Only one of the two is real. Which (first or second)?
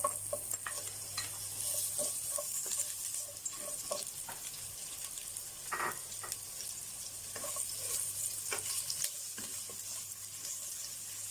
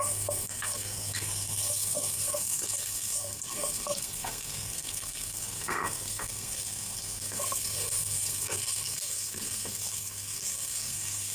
first